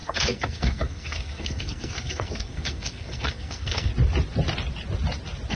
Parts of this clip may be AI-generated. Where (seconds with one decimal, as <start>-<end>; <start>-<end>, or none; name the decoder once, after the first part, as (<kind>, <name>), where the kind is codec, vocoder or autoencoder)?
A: 0.0-3.9 (codec, SNAC)

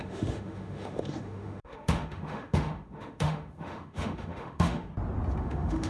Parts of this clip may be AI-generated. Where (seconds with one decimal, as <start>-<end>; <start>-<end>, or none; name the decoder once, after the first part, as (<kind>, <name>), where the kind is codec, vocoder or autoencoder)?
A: 0.0-4.9 (autoencoder, DAC-VAE); 5.4-5.9

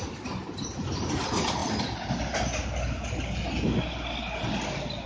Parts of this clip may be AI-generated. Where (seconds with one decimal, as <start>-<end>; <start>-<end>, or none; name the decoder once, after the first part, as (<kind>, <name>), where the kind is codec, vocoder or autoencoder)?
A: none

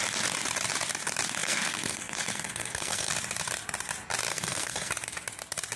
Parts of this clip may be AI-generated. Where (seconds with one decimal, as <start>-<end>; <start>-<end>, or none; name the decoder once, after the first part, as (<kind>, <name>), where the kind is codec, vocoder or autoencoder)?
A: 1.4-3.1 (codec, SNAC); 4.3-4.9